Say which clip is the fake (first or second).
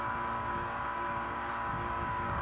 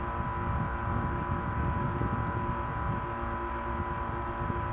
first